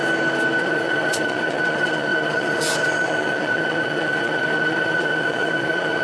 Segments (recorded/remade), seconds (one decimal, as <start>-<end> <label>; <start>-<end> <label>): 0.0-0.6 recorded; 0.6-6.0 remade